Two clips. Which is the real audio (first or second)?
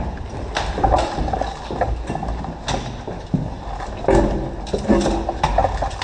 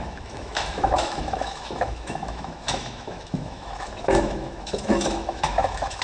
first